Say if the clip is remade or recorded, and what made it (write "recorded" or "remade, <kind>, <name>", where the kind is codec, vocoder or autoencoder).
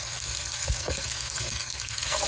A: remade, codec, SNAC